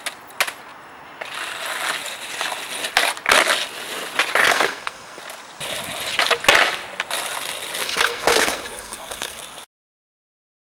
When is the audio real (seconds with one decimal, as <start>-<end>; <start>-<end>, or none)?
0.0-4.4; 5.2-7.8; 9.4-10.7